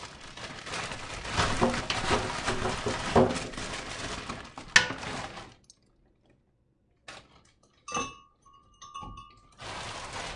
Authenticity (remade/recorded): recorded